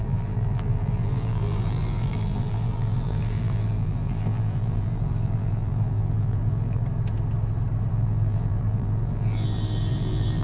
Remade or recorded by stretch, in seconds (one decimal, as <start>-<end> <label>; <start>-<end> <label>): 0.0-6.8 remade; 6.8-7.9 recorded; 7.9-10.4 remade